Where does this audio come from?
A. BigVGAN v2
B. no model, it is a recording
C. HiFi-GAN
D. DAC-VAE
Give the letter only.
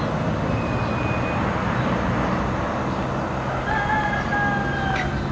B